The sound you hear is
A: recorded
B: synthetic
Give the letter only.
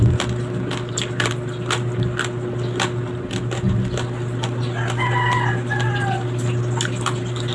A